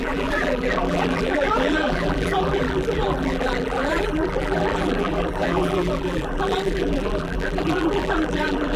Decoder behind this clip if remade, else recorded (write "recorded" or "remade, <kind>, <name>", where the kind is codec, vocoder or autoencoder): remade, vocoder, BigVGAN v2